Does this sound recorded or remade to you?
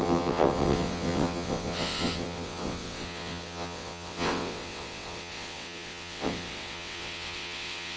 remade